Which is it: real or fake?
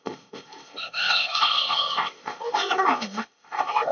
fake